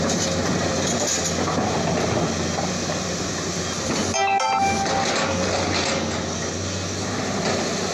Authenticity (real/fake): real